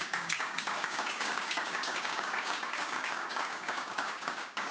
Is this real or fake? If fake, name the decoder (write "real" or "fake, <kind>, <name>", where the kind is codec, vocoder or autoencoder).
fake, codec, DAC